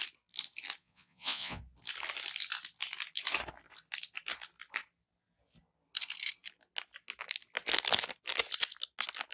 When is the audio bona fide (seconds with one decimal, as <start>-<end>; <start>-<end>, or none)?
0.0-0.8; 1.6-9.3